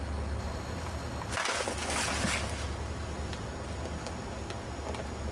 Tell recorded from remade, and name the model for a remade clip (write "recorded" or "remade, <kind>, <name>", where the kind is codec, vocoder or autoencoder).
recorded